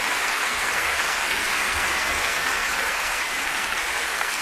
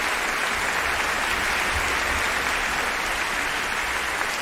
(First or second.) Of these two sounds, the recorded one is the second